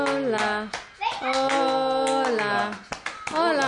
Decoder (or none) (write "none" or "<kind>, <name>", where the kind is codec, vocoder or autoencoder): none